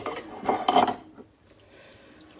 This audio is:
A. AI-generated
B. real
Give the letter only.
B